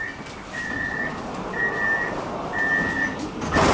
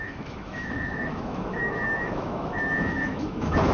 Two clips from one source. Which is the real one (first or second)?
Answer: first